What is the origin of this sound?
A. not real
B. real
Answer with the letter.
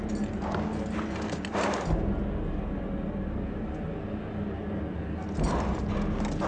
B